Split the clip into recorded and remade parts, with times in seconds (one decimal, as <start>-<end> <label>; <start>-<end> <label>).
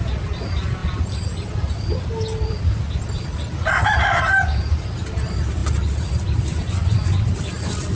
0.0-8.0 recorded